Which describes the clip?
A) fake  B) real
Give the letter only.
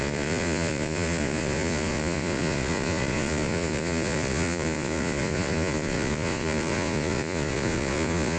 A